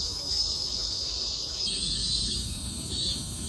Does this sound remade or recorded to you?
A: remade